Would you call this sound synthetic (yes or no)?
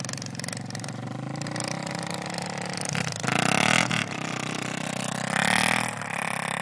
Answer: no